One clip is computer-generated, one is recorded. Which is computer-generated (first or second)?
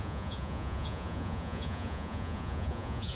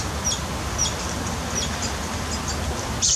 first